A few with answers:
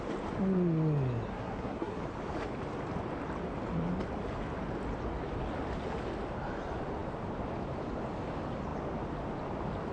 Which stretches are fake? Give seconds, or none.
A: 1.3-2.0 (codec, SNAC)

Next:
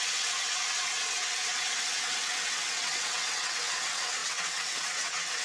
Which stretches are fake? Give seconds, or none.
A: 0.0-5.4 (vocoder, WaveNeXt)